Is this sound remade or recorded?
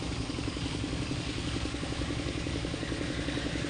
remade